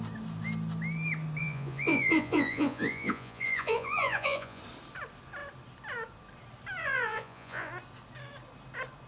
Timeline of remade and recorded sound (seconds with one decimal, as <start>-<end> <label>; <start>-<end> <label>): 0.0-1.4 recorded; 1.4-4.6 remade; 4.6-6.8 recorded; 6.8-7.7 remade; 7.7-9.1 recorded

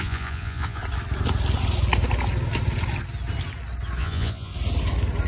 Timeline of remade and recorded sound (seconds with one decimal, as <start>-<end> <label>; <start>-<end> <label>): 0.0-0.8 remade; 0.8-4.0 recorded; 4.0-4.5 remade; 4.5-5.3 recorded

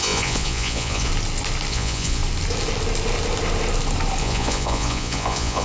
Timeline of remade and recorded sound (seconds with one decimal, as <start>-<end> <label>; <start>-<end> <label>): 0.0-1.1 remade; 1.1-1.7 recorded; 1.7-2.2 remade; 2.2-4.2 recorded; 4.2-5.6 remade

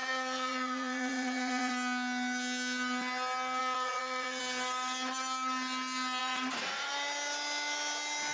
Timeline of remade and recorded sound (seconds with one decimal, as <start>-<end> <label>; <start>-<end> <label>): 0.0-1.7 remade; 1.7-3.6 recorded; 3.6-4.4 remade; 4.4-6.2 recorded; 6.2-6.9 remade; 6.9-8.3 recorded

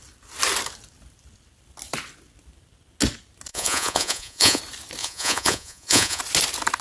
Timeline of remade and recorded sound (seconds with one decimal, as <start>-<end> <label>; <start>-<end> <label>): 0.0-3.5 recorded; 3.5-4.6 remade; 4.6-5.0 recorded; 5.0-6.2 remade; 6.2-6.8 recorded

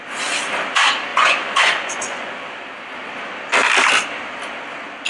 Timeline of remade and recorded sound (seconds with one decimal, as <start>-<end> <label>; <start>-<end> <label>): 0.0-1.1 recorded; 1.1-2.3 remade; 2.3-5.1 recorded

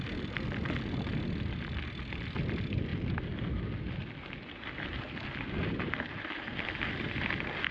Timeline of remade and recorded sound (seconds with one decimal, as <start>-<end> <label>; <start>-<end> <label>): 0.0-7.7 recorded